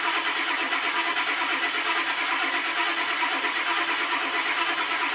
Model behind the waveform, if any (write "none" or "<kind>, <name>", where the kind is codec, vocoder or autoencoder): none